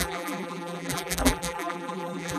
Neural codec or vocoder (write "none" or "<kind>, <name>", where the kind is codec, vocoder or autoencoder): vocoder, BigVGAN v2